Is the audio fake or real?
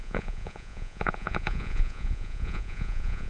fake